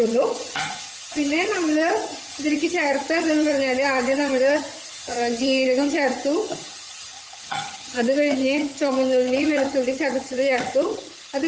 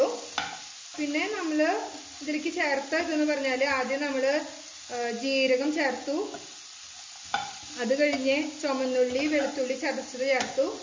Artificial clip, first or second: first